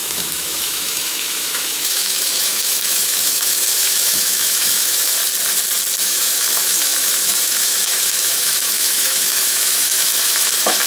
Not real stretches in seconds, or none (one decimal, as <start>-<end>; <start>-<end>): 0.0-5.2; 6.0-10.9